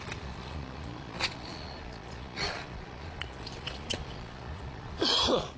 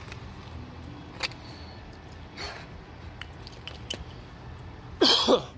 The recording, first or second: second